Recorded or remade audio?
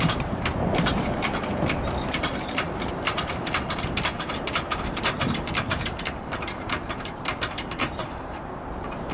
remade